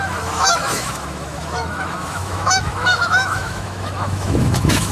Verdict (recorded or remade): remade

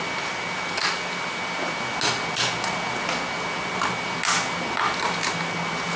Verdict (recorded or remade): recorded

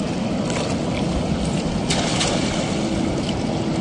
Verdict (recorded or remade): recorded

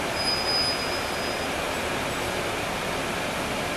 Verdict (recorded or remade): recorded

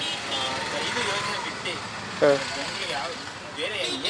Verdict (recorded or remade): recorded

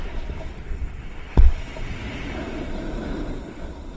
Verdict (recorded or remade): recorded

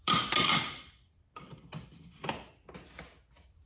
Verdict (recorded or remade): recorded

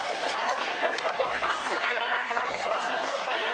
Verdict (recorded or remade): remade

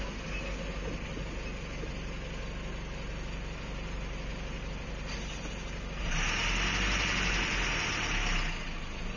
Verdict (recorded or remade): recorded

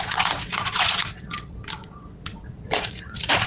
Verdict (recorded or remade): remade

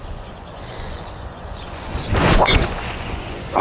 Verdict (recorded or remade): remade